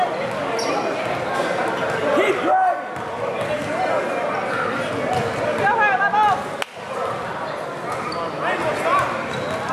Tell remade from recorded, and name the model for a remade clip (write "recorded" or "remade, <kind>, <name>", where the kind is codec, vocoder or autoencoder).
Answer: recorded